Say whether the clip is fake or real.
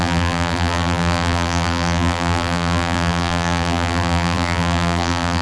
fake